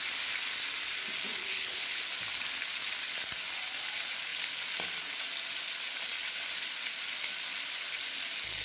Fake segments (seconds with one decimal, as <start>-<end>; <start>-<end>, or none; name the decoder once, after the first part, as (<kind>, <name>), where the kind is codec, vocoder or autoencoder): 1.4-2.0 (codec, HILCodec)